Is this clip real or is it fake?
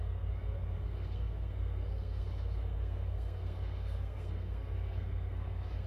fake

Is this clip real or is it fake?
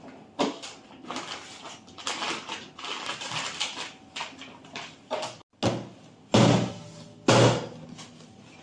real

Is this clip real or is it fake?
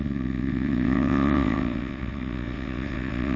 fake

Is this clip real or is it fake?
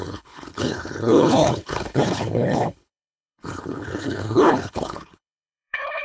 fake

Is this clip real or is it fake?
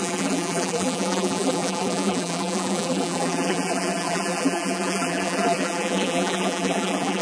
fake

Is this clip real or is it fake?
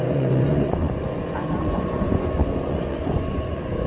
fake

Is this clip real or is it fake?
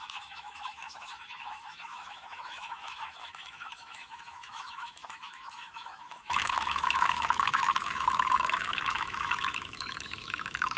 fake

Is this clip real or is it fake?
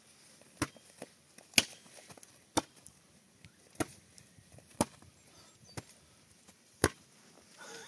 real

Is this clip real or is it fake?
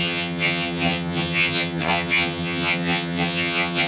fake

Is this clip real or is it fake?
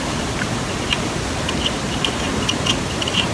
real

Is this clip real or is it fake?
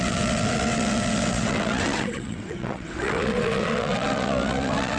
fake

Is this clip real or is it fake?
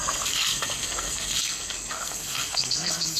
fake